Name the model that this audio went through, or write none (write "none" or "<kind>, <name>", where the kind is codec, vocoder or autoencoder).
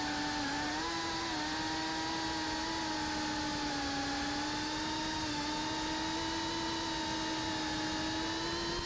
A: none